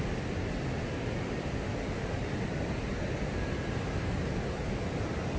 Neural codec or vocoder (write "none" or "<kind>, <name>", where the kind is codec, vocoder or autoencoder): none